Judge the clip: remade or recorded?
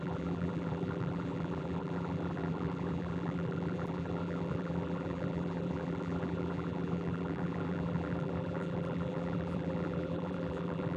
remade